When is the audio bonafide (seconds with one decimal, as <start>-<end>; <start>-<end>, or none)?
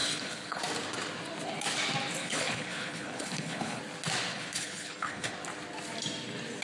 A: 0.6-2.2; 3.8-4.3; 5.3-6.6